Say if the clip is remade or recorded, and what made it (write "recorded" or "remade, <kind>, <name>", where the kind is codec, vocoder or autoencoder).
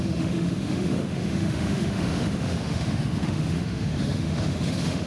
remade, autoencoder, DAC-VAE